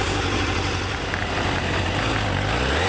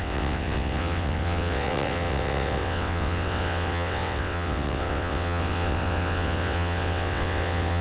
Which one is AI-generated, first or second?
second